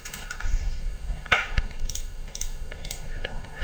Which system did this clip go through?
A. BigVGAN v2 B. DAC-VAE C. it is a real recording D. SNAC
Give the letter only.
B